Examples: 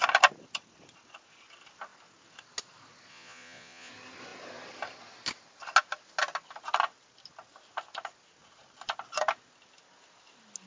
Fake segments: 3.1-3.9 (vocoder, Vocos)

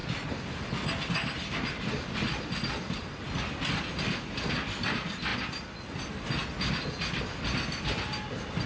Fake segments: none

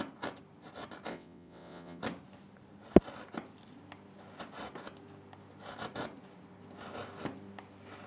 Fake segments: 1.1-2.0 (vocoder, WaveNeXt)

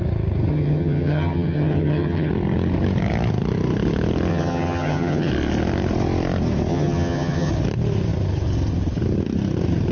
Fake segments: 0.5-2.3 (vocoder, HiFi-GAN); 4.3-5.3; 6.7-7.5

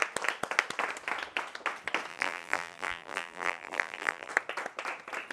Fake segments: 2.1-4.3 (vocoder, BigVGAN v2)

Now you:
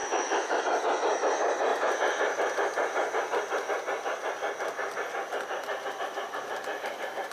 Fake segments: 0.0-0.6 (autoencoder, DAC-VAE)

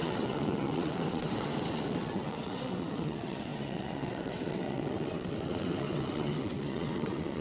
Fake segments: 0.0-7.4 (vocoder, WaveNeXt)